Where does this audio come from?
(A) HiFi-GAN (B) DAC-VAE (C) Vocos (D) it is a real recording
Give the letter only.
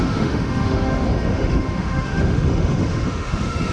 B